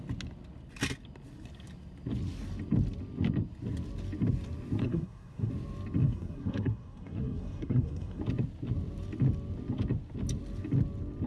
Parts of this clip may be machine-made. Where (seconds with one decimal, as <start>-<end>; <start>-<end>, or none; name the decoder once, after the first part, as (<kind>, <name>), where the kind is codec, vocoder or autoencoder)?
4.8-5.5 (codec, SNAC); 6.0-8.2